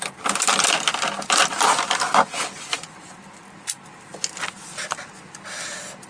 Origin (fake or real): real